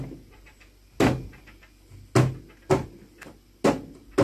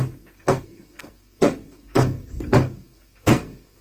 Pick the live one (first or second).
first